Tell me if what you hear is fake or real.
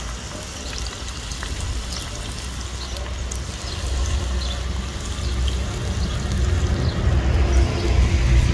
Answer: real